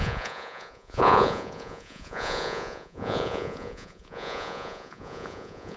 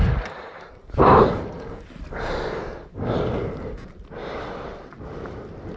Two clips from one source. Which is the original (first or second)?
second